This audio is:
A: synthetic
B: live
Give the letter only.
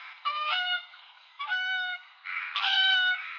A